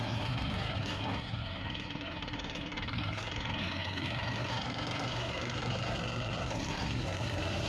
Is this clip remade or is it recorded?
remade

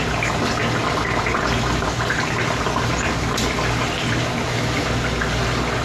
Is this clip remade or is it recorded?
recorded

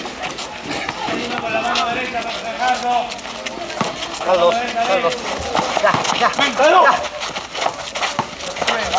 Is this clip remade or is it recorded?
recorded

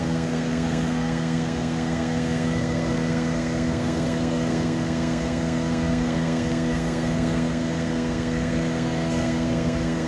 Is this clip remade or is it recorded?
remade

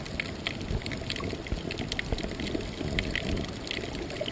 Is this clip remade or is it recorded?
recorded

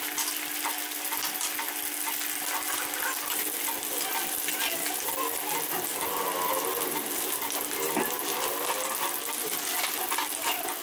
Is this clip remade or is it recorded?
recorded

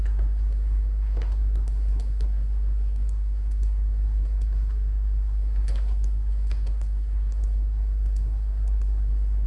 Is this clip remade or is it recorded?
remade